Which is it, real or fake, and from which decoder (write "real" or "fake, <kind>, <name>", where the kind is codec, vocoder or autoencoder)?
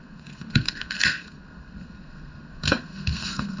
fake, codec, SNAC